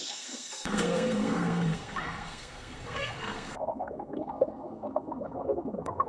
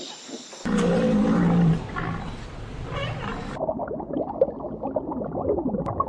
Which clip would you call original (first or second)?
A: second